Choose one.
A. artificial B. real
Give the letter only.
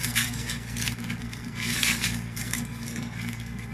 A